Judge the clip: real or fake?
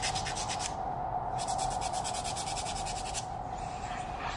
real